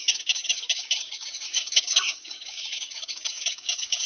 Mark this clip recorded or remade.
remade